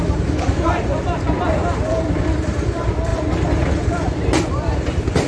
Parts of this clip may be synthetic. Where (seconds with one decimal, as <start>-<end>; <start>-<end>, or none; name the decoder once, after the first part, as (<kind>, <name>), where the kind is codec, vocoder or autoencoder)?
0.0-3.1 (vocoder, BigVGAN v2); 3.8-5.3